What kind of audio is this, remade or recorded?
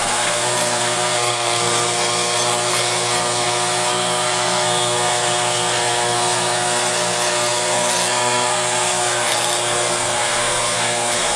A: remade